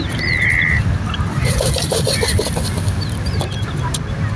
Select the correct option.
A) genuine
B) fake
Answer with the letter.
A